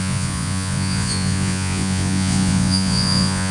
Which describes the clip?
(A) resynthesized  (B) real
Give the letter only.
A